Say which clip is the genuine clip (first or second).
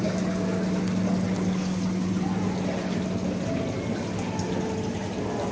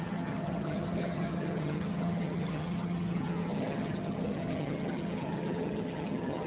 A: first